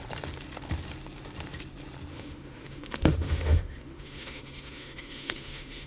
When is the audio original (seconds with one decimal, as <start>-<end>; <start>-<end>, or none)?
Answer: 0.0-2.1